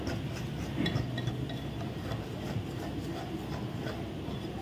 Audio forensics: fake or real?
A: real